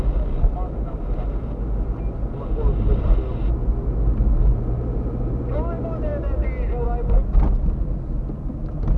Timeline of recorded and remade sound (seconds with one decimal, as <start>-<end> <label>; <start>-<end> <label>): 0.0-9.0 recorded